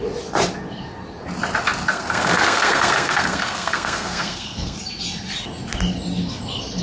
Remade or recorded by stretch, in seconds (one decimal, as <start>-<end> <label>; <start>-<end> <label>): 0.0-1.9 recorded; 1.9-4.8 remade; 4.8-6.8 recorded